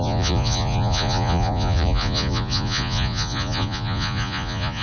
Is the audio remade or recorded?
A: remade